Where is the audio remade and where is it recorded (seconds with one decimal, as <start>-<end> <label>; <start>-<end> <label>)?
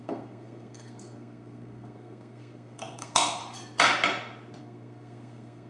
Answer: 0.0-3.4 remade; 3.4-4.6 recorded; 4.6-5.7 remade